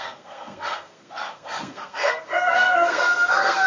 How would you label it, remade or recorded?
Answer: remade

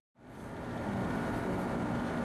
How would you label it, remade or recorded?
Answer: recorded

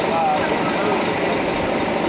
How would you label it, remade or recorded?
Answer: recorded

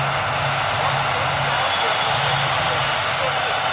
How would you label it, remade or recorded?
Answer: recorded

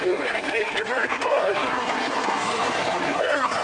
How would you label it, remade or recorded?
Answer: remade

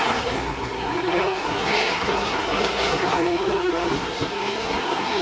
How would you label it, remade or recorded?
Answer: remade